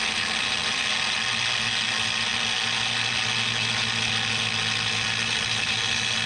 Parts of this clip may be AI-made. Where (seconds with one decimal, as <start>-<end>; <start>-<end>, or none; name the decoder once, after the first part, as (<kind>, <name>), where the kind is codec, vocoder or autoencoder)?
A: none